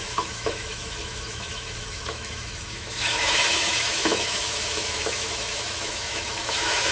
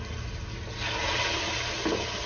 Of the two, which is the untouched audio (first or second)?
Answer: second